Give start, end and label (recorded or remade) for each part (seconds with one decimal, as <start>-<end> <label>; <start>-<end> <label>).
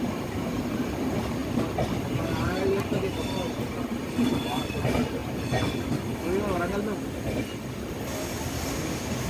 0.0-1.4 remade; 1.4-2.0 recorded; 2.0-5.2 remade; 5.2-8.5 recorded; 8.5-9.3 remade